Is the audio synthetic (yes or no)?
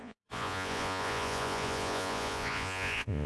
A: yes